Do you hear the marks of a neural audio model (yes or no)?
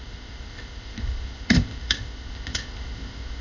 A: yes